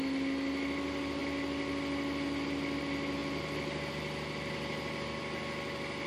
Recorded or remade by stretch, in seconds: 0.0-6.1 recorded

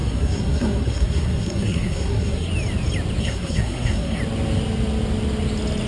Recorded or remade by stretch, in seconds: 0.0-2.5 remade; 2.5-3.2 recorded; 3.2-4.2 remade; 4.2-5.9 recorded

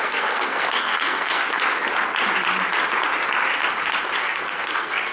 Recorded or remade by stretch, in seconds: 0.0-1.4 remade; 1.4-4.2 recorded; 4.2-5.1 remade

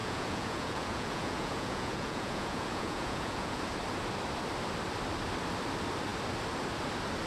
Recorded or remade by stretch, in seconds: 0.0-3.6 remade; 3.6-7.3 recorded

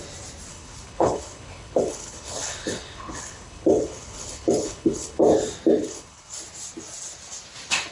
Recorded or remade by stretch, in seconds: 0.0-0.5 recorded; 0.5-5.2 remade; 5.2-5.8 recorded; 5.8-6.4 remade; 6.4-7.9 recorded

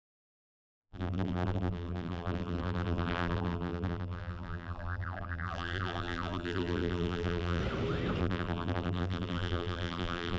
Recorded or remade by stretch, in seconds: 0.0-7.6 remade; 7.6-8.2 recorded; 8.2-10.4 remade

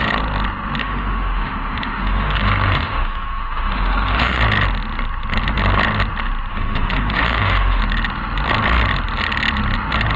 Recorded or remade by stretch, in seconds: 0.0-0.8 recorded; 0.8-4.4 remade; 4.4-6.5 recorded; 6.5-7.8 remade; 7.8-10.2 recorded